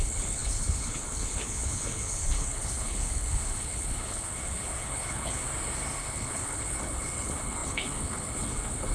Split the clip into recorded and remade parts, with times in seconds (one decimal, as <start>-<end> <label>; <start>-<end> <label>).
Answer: 0.0-5.4 remade; 5.4-6.0 recorded; 6.0-8.9 remade